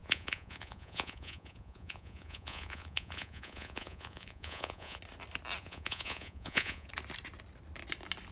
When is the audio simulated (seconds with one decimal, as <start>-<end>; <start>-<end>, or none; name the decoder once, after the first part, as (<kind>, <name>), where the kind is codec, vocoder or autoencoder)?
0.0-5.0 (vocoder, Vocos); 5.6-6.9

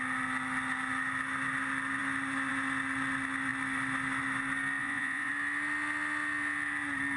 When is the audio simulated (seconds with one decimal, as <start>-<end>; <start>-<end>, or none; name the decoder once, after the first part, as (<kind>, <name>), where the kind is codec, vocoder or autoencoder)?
4.8-5.3 (vocoder, Vocos)

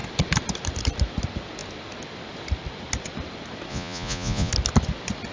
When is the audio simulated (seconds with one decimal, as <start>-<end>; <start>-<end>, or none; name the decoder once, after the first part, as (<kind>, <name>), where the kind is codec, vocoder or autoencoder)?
3.7-4.5 (vocoder, Vocos)